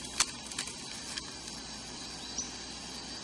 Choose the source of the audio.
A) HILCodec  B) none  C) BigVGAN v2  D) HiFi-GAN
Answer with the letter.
B